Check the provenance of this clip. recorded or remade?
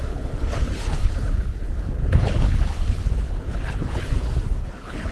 remade